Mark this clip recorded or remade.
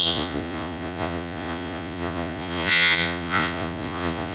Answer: remade